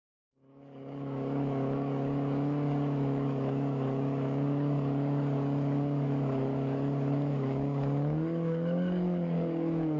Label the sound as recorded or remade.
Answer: remade